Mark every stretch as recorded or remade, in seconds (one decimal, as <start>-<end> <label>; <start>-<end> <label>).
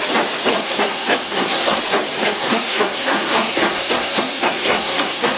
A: 0.0-0.5 recorded; 0.5-1.8 remade; 1.8-2.2 recorded; 2.2-5.4 remade